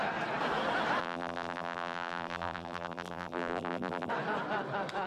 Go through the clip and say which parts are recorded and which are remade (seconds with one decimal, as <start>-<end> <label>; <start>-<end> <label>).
0.0-1.0 recorded; 1.0-4.1 remade; 4.1-5.1 recorded